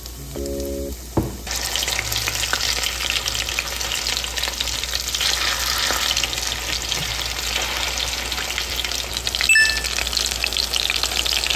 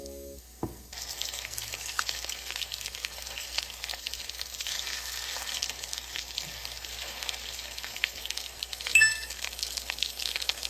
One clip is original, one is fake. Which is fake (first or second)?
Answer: second